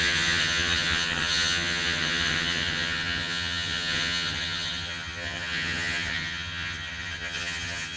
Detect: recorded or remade remade